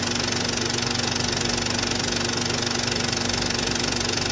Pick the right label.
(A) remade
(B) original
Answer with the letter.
B